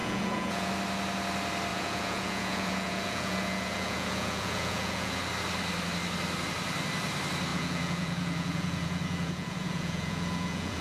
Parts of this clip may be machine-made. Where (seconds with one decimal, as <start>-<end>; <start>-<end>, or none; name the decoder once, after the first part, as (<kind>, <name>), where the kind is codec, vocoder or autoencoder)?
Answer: 0.0-0.7 (vocoder, Vocos); 1.7-5.2; 7.5-10.8